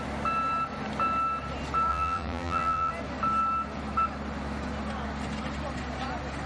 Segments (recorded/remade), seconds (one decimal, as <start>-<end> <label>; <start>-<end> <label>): 0.0-1.9 recorded; 1.9-2.9 remade; 2.9-6.5 recorded